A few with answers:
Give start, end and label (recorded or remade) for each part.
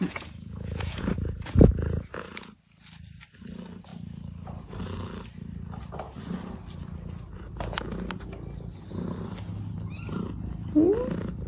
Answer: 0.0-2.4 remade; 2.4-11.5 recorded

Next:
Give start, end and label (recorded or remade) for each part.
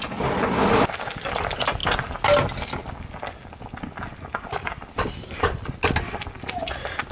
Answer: 0.0-4.6 recorded; 4.6-5.7 remade; 5.7-7.1 recorded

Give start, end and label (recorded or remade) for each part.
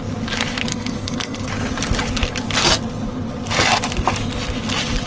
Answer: 0.0-0.7 recorded; 0.7-1.5 remade; 1.5-5.1 recorded